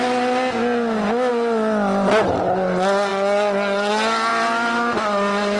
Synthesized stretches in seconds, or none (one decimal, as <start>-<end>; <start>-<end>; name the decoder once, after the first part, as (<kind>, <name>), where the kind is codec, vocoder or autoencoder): none